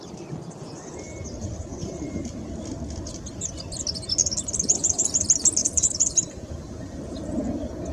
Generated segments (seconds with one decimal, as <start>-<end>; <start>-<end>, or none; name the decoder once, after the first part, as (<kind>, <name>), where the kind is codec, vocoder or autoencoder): 5.6-7.4 (vocoder, BigVGAN v2)